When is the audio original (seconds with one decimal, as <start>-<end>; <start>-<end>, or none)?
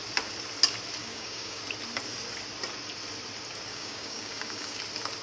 0.0-1.0; 1.6-3.7; 4.8-5.2